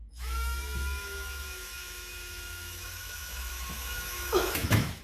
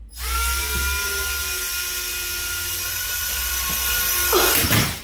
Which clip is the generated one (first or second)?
first